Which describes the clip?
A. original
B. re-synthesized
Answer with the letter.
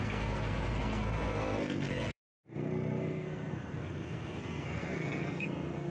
B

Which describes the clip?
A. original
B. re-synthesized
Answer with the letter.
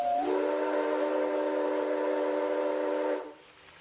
A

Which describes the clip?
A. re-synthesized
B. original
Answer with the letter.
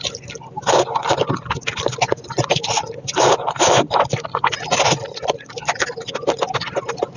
B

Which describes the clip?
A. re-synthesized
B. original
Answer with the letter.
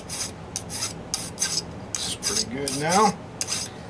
B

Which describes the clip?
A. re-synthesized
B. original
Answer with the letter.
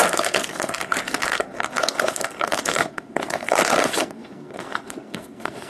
A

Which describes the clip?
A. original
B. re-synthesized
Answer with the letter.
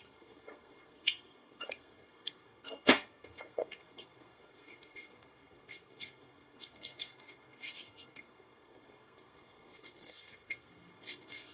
B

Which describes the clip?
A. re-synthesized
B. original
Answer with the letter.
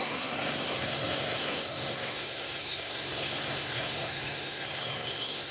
A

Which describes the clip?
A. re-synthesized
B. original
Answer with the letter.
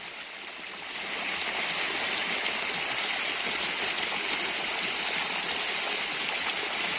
B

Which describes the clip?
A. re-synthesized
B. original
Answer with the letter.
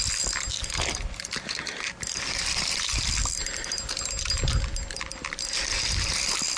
B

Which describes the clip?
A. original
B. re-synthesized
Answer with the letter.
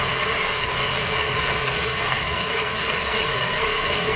B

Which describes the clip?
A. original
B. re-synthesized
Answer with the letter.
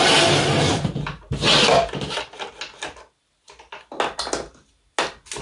A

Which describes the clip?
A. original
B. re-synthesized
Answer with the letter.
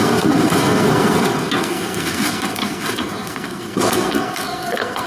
B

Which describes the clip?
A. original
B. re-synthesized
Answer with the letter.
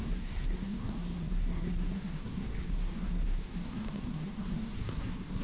B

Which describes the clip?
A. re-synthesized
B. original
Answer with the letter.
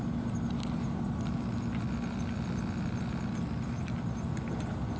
B